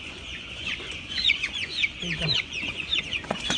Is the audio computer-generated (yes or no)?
yes